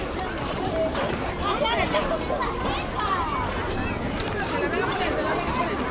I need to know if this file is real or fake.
fake